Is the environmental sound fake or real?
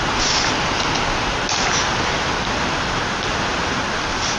real